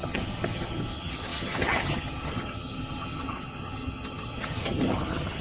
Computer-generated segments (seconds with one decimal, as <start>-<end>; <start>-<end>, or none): 0.0-5.4